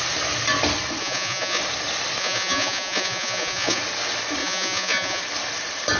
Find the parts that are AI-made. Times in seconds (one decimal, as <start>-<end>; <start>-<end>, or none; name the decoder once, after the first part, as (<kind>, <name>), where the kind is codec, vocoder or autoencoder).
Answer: 1.0-1.6 (vocoder, Vocos); 2.2-3.8; 4.4-5.2